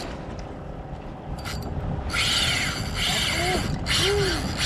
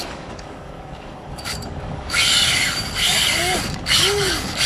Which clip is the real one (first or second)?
first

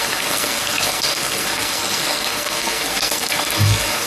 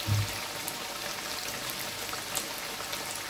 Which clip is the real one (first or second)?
second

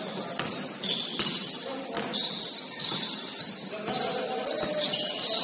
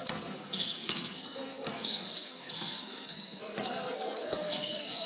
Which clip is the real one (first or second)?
first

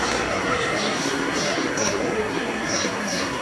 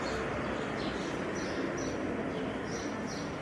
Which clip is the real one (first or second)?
second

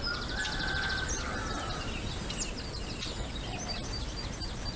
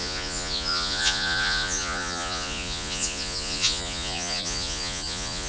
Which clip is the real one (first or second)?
first